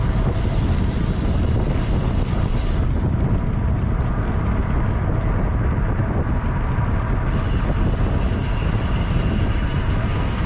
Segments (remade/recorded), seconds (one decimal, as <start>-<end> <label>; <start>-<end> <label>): 0.0-10.0 recorded; 10.0-10.5 remade